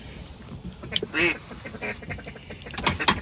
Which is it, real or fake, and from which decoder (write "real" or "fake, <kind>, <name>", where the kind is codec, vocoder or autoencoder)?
real